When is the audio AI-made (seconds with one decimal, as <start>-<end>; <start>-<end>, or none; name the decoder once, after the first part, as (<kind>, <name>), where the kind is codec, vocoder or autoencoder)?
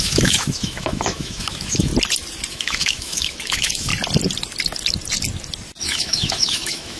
0.0-1.9 (autoencoder, DAC-VAE); 2.5-3.9; 5.8-7.0